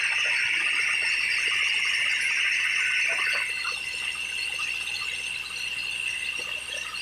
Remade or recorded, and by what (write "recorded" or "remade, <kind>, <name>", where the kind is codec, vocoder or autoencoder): recorded